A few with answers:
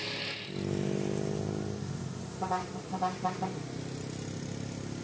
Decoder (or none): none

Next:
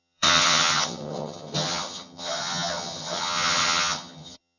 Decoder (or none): vocoder, HiFi-GAN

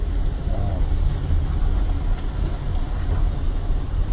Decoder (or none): none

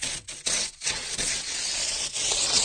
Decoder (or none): vocoder, WaveNeXt